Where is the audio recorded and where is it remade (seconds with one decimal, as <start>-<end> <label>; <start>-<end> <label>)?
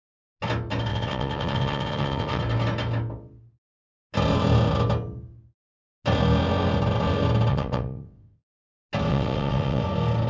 0.0-0.9 recorded; 0.9-2.4 remade; 2.4-7.5 recorded; 7.5-8.5 remade; 8.5-9.1 recorded; 9.1-9.8 remade; 9.8-10.3 recorded